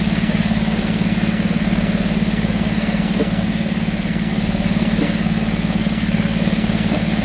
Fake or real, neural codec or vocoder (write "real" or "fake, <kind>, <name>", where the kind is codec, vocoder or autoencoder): fake, codec, SNAC